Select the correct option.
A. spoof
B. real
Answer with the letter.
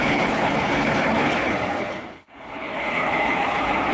A